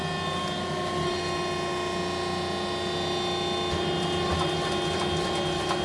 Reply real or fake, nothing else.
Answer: real